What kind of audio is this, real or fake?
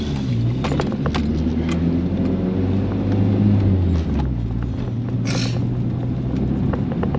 real